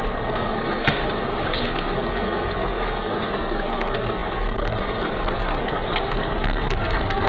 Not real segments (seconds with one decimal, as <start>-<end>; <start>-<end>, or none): 0.0-1.0; 1.5-7.3